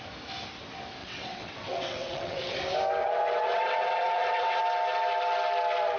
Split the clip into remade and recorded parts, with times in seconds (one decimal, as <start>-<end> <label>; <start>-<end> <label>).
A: 0.0-1.0 recorded; 1.0-2.6 remade; 2.6-3.0 recorded; 3.0-4.6 remade; 4.6-6.0 recorded